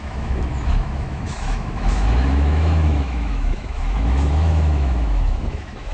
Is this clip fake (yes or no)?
yes